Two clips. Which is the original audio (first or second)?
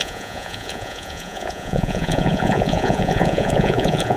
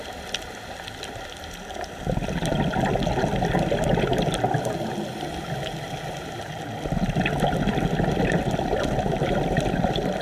second